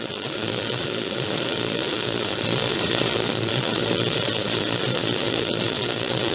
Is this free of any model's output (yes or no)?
no